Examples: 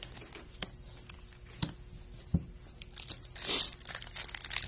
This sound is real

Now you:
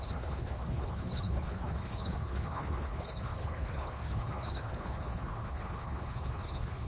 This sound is fake